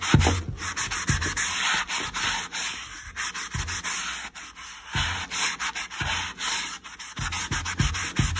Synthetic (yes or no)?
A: no